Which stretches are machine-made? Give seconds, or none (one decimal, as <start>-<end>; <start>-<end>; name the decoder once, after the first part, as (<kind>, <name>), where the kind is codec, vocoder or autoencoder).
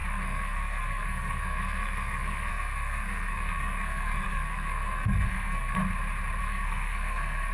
0.0-5.8 (codec, SNAC); 6.4-7.5